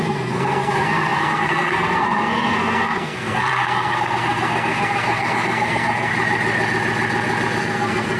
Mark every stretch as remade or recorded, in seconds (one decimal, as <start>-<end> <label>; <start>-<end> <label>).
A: 0.0-6.1 remade; 6.1-7.6 recorded; 7.6-8.2 remade

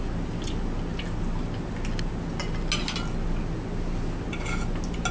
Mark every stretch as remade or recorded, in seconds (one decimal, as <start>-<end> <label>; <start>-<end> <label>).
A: 0.0-5.1 recorded

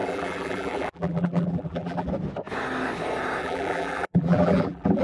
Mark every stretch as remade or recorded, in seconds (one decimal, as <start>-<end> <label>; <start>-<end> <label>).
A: 0.0-2.1 remade; 2.1-3.4 recorded; 3.4-5.0 remade

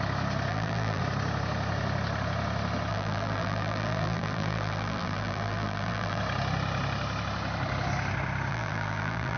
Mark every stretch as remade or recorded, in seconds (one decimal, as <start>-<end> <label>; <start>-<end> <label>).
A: 0.0-0.5 recorded; 0.5-1.0 remade; 1.0-2.9 recorded; 2.9-6.2 remade; 6.2-8.5 recorded; 8.5-9.4 remade

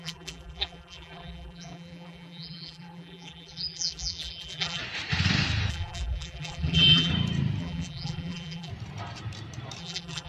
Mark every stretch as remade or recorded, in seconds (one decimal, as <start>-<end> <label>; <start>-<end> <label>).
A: 0.0-4.8 remade; 4.8-5.7 recorded; 5.7-7.1 remade; 7.1-7.6 recorded; 7.6-8.7 remade; 8.7-9.8 recorded; 9.8-10.3 remade

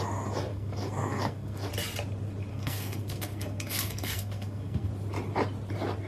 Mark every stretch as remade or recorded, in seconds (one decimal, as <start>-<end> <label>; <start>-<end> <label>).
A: 0.0-0.5 recorded; 0.5-1.7 remade; 1.7-2.5 recorded; 2.5-4.9 remade; 4.9-6.1 recorded

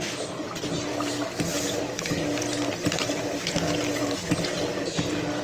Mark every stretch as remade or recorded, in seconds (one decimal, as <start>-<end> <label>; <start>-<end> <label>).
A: 0.0-1.5 recorded; 1.5-4.7 remade; 4.7-5.4 recorded

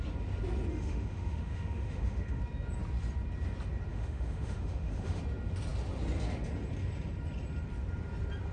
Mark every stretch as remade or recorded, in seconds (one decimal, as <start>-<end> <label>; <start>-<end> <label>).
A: 0.0-0.7 recorded; 0.7-2.4 remade; 2.4-3.9 recorded; 3.9-5.2 remade; 5.2-8.5 recorded